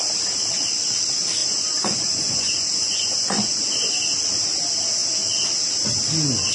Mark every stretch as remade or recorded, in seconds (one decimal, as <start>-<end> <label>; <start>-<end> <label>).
0.0-1.4 recorded; 1.4-3.9 remade; 3.9-6.5 recorded